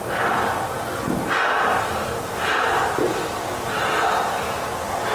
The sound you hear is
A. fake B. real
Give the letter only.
A